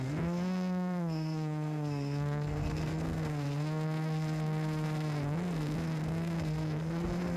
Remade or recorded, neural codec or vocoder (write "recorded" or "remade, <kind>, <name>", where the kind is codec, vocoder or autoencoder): remade, codec, SNAC